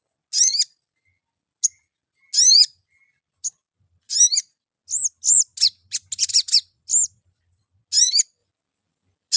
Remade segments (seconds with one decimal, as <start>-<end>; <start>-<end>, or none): none